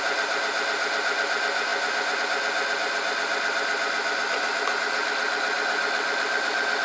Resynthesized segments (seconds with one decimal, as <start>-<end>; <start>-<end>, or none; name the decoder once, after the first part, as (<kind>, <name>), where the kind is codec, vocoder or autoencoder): none